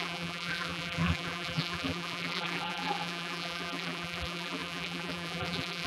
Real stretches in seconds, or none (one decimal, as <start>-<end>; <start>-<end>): none